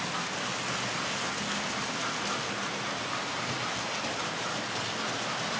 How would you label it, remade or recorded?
recorded